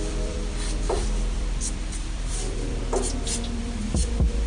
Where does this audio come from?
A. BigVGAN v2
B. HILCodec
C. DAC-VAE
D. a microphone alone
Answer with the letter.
A